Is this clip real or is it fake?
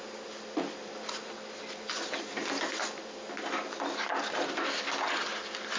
real